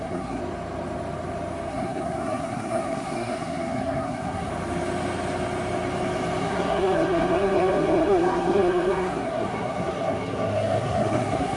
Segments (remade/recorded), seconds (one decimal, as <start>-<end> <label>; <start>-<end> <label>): 0.0-0.4 remade; 0.4-1.7 recorded; 1.7-4.5 remade; 4.5-6.4 recorded; 6.4-11.6 remade